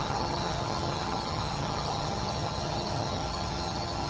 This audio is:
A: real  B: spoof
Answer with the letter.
B